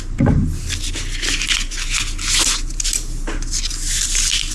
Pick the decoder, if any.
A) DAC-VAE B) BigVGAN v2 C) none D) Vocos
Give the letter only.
C